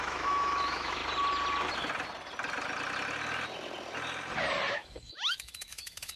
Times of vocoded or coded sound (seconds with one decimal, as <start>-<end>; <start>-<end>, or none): 0.0-1.0; 4.7-6.2

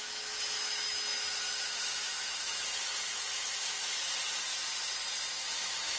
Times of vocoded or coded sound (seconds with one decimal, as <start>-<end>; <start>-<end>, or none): 0.0-4.5; 5.4-6.0

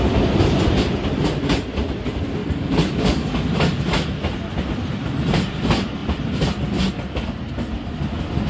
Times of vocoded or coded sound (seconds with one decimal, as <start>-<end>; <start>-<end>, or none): 2.4-3.5

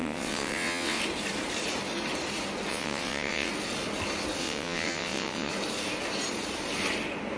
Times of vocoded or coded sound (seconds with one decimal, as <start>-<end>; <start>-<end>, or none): 0.0-1.0; 2.7-3.5; 4.4-5.5

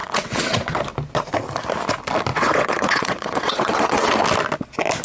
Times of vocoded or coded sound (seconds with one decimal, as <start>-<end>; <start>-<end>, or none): 0.0-0.8; 2.3-4.1

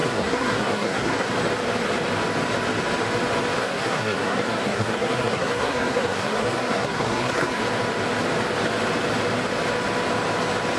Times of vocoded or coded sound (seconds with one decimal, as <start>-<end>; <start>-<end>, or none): 0.0-1.3; 3.6-7.6

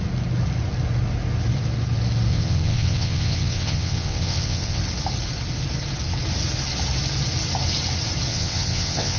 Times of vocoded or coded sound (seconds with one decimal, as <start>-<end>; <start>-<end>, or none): 2.3-4.8; 8.3-9.2